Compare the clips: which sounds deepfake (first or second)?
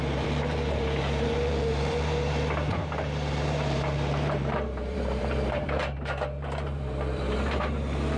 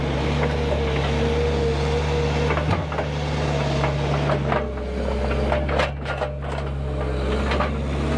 first